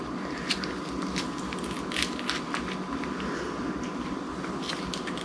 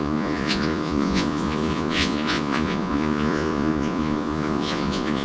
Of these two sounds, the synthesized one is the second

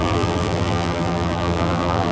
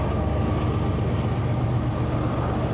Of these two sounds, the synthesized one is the first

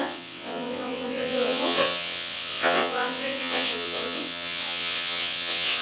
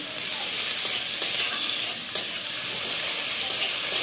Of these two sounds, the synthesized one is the first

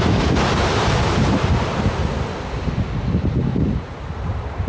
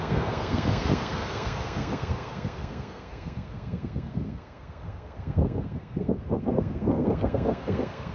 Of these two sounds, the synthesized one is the second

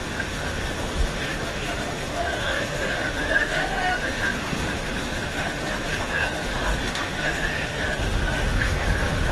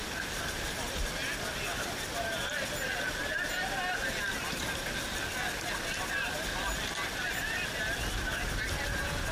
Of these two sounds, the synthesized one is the first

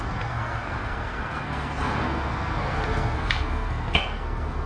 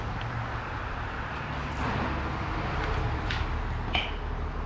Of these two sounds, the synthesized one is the first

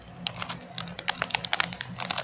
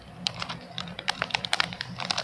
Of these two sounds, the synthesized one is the second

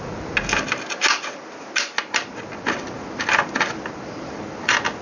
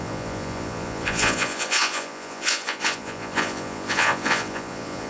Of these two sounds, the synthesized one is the second